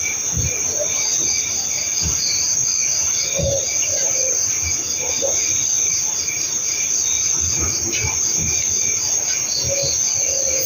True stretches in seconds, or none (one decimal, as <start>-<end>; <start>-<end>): 0.0-10.7